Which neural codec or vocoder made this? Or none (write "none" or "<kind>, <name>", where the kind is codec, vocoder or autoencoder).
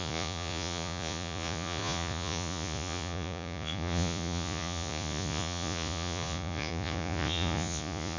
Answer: vocoder, Vocos